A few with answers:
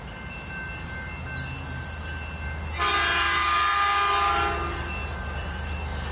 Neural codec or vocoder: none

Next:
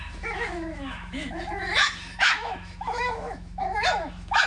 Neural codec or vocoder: autoencoder, DAC-VAE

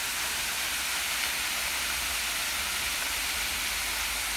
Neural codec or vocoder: none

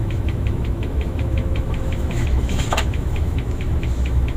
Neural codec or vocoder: autoencoder, DAC-VAE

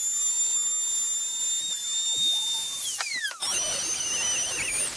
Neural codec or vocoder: none